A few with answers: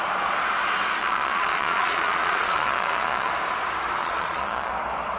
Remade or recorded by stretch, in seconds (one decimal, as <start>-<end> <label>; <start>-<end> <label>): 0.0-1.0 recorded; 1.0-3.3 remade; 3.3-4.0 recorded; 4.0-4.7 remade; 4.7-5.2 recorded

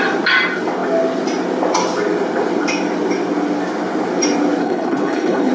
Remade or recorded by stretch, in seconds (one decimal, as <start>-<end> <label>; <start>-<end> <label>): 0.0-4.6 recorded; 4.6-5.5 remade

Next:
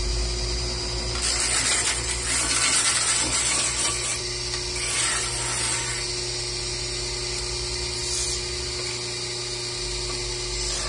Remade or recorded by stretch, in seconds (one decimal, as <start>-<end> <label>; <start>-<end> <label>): 0.0-10.9 recorded

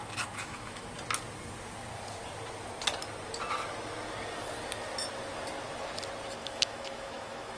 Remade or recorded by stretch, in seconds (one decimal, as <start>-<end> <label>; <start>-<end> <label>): 0.0-0.9 remade; 0.9-6.4 recorded; 6.4-7.6 remade

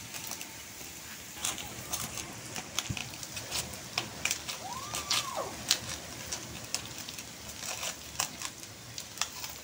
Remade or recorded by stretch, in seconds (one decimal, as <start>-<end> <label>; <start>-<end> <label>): 0.0-1.4 recorded; 1.4-2.1 remade; 2.1-3.0 recorded; 3.0-3.6 remade; 3.6-9.6 recorded

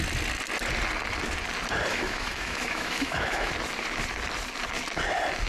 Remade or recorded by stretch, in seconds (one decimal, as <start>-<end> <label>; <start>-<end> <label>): 0.0-1.9 recorded; 1.9-3.5 remade; 3.5-5.5 recorded

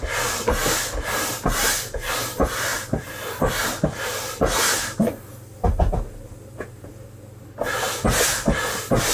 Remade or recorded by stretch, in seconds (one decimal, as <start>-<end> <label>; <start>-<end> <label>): 0.0-9.1 recorded